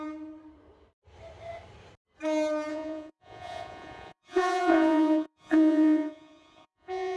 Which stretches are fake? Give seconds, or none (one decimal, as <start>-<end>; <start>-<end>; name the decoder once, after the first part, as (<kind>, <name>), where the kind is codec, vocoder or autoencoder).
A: 2.7-7.2 (vocoder, Vocos)